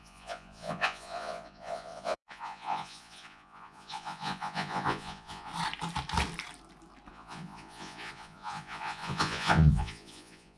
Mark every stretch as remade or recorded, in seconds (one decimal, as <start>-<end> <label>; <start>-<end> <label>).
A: 0.0-5.5 remade; 5.5-7.1 recorded; 7.1-10.6 remade